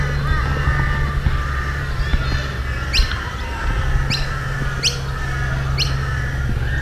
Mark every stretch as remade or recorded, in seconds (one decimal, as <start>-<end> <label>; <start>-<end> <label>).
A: 0.0-6.8 recorded